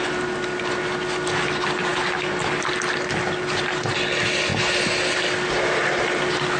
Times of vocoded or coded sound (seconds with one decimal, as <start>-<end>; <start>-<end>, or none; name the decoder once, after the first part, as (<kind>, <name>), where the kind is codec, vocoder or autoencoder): none

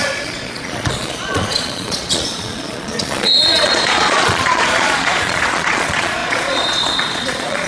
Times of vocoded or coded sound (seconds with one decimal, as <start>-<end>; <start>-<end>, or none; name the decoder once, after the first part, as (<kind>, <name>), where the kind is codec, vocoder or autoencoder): 0.0-7.7 (vocoder, Vocos)

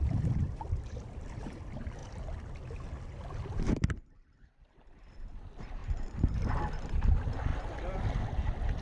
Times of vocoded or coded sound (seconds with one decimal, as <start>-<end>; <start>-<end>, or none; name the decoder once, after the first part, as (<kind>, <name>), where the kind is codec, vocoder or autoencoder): 0.0-2.0 (vocoder, BigVGAN v2); 4.7-5.8; 6.7-8.8